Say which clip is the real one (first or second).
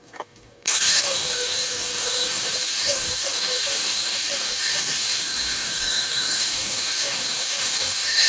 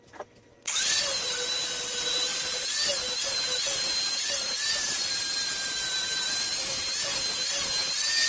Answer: second